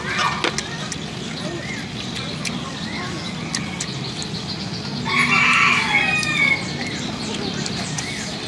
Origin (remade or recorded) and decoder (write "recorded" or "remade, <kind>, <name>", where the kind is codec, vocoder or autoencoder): recorded